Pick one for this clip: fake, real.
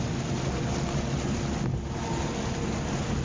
real